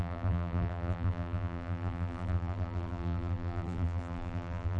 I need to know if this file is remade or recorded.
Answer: remade